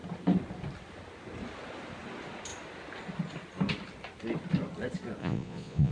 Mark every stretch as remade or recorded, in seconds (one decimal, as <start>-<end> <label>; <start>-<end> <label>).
0.0-5.2 recorded; 5.2-5.9 remade